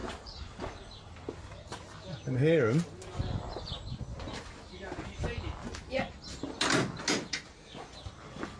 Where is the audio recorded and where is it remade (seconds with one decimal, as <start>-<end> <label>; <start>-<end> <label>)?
0.0-0.7 remade; 0.7-8.6 recorded